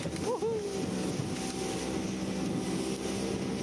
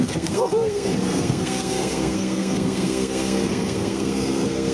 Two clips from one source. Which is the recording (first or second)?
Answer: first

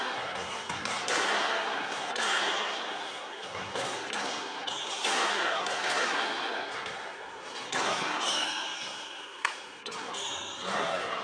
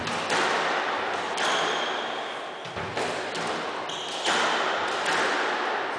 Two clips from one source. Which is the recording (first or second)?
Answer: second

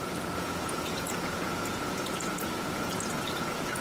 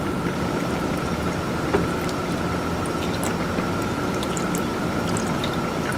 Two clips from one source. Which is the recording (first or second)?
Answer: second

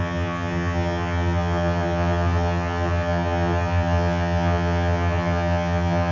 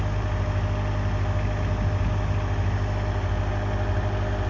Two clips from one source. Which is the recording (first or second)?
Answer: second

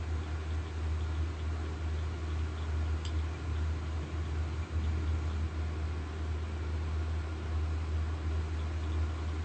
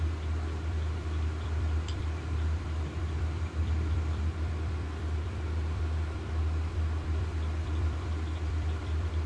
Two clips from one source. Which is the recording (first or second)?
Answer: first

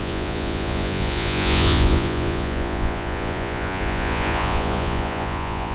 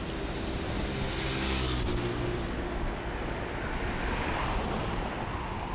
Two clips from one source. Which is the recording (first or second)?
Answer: second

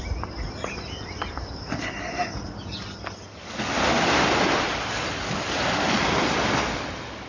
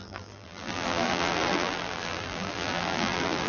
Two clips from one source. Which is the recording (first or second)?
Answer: first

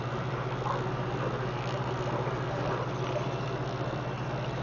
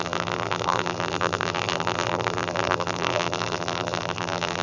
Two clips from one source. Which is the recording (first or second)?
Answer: first